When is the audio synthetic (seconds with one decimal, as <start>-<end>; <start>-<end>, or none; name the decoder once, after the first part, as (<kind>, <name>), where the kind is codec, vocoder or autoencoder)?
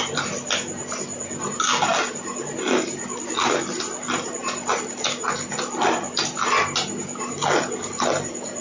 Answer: none